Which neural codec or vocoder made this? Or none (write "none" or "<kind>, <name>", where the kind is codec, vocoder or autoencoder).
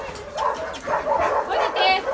none